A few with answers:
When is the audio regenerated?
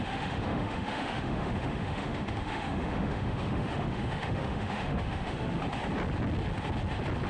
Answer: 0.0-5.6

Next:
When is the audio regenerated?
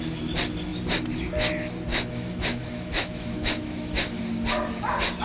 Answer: 1.9-4.2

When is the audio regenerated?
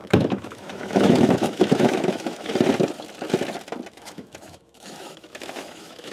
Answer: 0.0-2.5; 3.9-6.1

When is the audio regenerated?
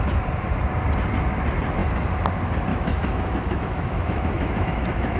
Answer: 2.7-5.2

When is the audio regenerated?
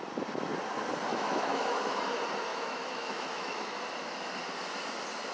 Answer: 1.1-2.0; 2.5-3.8